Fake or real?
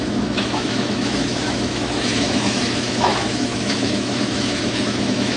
fake